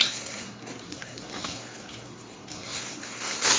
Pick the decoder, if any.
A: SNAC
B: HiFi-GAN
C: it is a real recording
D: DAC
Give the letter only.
A